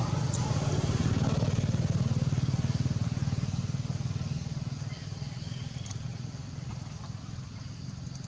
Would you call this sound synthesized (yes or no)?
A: no